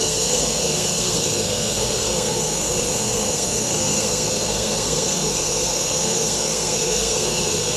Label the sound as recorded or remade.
remade